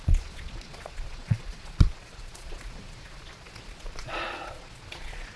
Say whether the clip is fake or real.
fake